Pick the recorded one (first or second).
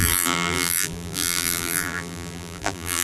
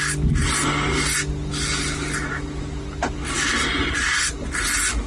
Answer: second